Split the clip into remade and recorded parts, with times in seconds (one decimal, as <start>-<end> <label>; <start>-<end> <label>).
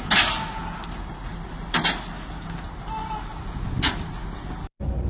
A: 0.0-5.1 recorded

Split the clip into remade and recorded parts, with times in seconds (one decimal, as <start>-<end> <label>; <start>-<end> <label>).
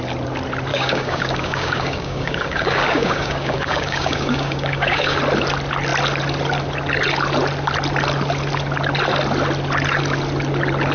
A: 0.0-0.7 recorded; 0.7-5.2 remade; 5.2-10.9 recorded